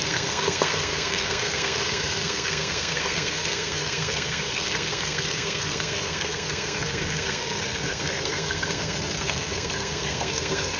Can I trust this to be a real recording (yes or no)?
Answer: no